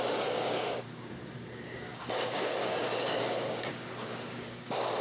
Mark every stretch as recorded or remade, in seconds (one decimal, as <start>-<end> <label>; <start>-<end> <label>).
0.0-5.0 remade